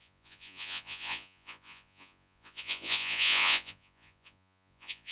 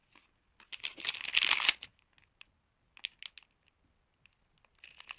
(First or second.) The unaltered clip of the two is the second